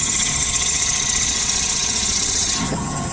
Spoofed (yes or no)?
yes